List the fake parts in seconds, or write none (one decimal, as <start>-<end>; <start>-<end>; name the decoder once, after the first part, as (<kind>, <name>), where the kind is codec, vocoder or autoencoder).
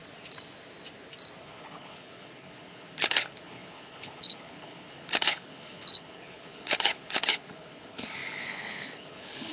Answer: 1.4-9.5 (codec, HILCodec)